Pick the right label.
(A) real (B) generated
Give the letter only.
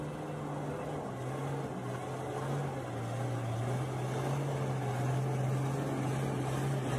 A